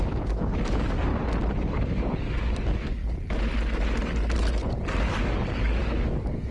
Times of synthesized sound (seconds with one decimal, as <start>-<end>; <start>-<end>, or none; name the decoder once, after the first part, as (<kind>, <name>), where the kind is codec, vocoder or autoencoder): 0.0-1.1 (codec, DAC); 1.7-3.0; 5.1-6.5